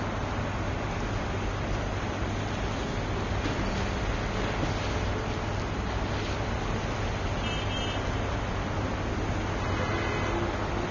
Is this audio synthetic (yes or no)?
no